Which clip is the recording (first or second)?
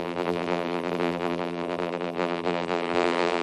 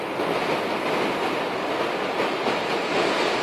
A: second